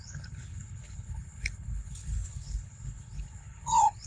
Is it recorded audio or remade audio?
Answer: remade